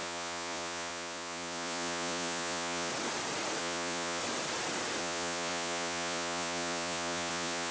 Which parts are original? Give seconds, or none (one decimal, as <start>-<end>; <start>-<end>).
2.9-3.6; 4.2-5.0